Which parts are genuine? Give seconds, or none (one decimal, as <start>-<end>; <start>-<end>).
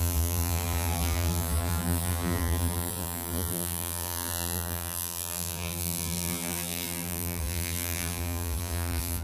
none